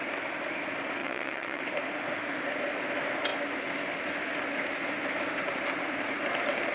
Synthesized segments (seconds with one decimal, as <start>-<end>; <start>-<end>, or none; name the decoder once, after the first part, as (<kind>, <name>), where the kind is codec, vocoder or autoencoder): 1.0-1.6 (vocoder, WaveNeXt)